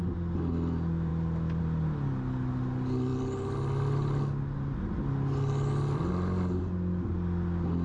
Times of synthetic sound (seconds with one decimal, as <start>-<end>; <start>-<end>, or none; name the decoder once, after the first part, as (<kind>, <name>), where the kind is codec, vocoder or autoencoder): none